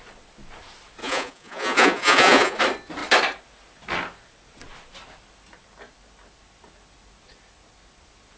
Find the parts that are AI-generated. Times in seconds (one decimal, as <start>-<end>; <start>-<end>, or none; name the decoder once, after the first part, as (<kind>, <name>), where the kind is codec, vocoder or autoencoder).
1.0-2.6 (vocoder, Vocos)